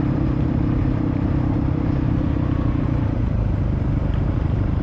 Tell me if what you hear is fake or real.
fake